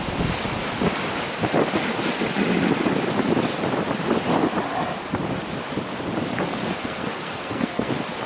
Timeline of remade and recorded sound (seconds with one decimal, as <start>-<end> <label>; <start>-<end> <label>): 0.0-6.8 recorded; 6.8-7.9 remade; 7.9-8.3 recorded